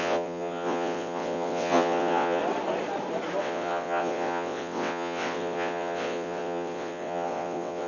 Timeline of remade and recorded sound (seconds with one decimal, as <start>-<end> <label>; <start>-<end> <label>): 0.0-2.4 remade; 2.4-3.4 recorded; 3.4-7.9 remade